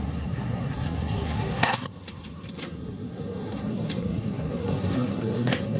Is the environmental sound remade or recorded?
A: remade